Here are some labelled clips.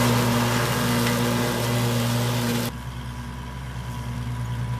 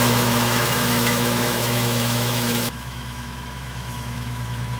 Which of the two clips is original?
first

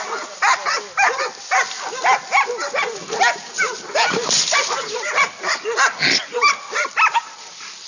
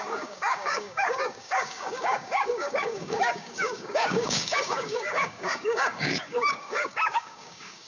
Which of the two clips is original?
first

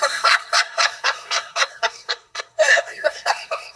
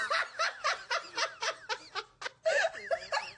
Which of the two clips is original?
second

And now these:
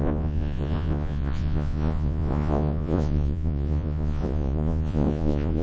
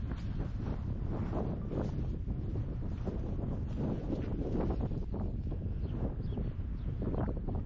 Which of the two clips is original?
second